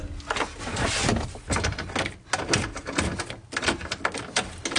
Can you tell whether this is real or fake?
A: real